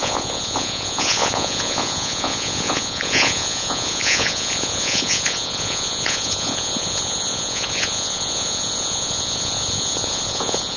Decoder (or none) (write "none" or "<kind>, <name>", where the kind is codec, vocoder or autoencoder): vocoder, Vocos